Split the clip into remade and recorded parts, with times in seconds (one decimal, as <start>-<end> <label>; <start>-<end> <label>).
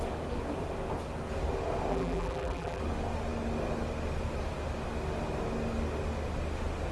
0.0-1.9 recorded; 1.9-2.8 remade; 2.8-6.9 recorded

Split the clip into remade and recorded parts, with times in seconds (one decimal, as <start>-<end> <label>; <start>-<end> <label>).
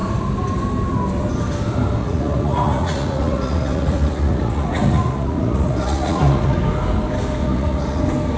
0.0-2.0 recorded; 2.0-6.6 remade; 6.6-7.4 recorded; 7.4-8.0 remade; 8.0-8.4 recorded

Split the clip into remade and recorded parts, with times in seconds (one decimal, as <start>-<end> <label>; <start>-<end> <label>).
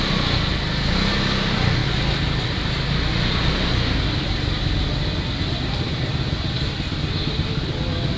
0.0-8.2 recorded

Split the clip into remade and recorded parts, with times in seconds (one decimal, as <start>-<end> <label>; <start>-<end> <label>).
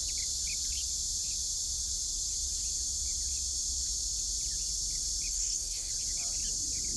0.0-5.3 recorded; 5.3-5.9 remade; 5.9-7.0 recorded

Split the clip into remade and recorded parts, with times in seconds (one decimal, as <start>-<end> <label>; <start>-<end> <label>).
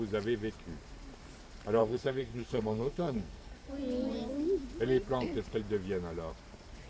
0.0-1.8 recorded; 1.8-3.7 remade; 3.7-6.9 recorded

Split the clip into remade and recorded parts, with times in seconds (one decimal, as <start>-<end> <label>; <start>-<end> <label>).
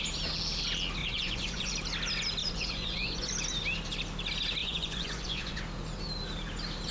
0.0-1.0 recorded; 1.0-1.7 remade; 1.7-2.4 recorded; 2.4-3.3 remade; 3.3-4.6 recorded; 4.6-5.6 remade; 5.6-6.9 recorded